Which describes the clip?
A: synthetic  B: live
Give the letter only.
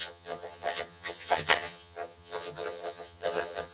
A